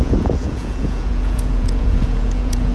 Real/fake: fake